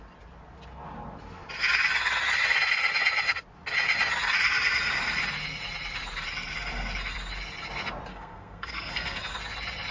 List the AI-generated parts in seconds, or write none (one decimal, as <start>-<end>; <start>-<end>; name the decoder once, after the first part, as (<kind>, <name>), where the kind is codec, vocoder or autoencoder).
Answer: 8.1-9.2 (codec, SNAC)

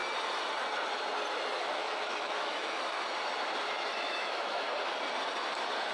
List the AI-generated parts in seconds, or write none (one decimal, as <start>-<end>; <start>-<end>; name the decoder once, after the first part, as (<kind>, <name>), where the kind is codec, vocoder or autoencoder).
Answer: 1.6-2.8 (autoencoder, DAC-VAE); 3.9-4.7

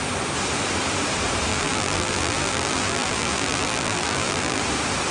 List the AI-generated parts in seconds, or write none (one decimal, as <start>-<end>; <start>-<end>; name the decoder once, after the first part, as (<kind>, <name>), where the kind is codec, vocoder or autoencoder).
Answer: 1.5-4.6 (vocoder, BigVGAN v2)

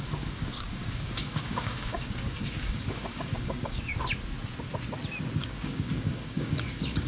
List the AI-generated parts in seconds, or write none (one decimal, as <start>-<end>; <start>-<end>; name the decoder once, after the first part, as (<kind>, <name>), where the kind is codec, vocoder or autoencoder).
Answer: 0.0-3.9 (codec, DAC); 5.5-7.1

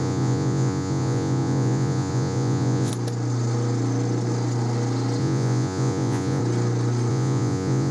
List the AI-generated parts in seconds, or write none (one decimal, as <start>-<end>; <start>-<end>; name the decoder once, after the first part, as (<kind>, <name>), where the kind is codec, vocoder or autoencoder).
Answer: 0.0-2.9 (vocoder, Vocos); 5.2-6.4; 7.1-7.9

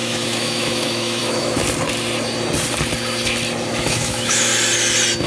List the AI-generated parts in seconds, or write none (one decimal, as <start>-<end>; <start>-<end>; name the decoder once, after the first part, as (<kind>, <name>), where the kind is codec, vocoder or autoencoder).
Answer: 0.0-1.6 (autoencoder, DAC-VAE); 3.7-4.5

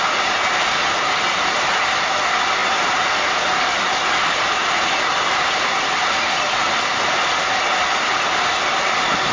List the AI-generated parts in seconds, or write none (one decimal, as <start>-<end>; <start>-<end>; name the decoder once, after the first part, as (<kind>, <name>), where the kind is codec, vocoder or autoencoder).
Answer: none